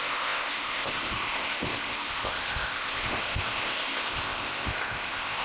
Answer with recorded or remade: remade